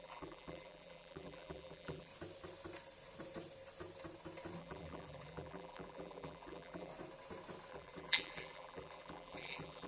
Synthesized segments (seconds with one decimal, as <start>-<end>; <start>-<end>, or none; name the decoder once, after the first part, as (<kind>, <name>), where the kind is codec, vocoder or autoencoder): 0.0-2.1 (vocoder, BigVGAN v2); 4.6-6.9; 7.7-9.9